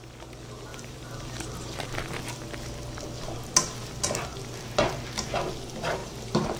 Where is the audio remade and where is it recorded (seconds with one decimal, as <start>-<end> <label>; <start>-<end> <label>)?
0.0-0.7 recorded; 0.7-2.1 remade; 2.1-6.0 recorded; 6.0-6.6 remade